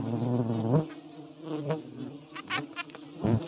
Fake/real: real